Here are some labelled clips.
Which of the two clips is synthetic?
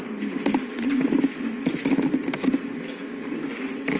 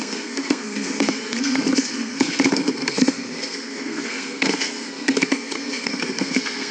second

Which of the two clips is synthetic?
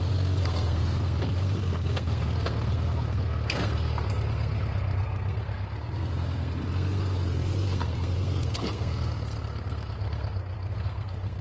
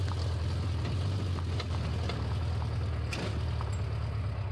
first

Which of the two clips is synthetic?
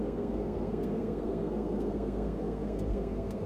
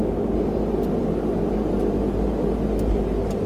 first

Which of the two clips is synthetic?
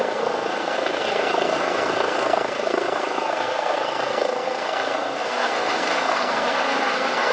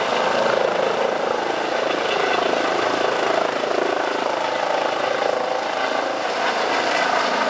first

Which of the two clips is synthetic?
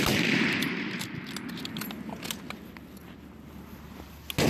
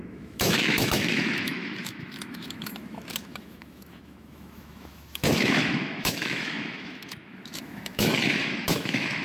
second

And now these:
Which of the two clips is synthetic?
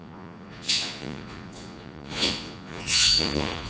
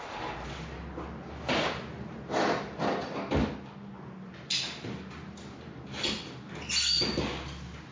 first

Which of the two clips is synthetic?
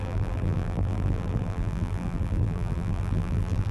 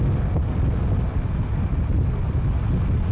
first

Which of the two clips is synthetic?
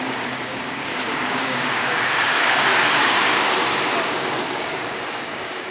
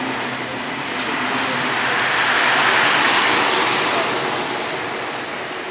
first